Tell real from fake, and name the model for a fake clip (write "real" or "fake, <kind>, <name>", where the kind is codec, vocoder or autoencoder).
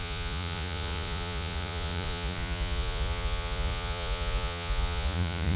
fake, vocoder, Vocos